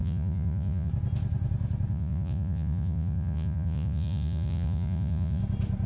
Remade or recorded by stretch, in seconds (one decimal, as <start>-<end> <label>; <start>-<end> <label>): 0.0-0.9 remade; 0.9-1.9 recorded; 1.9-5.4 remade; 5.4-5.9 recorded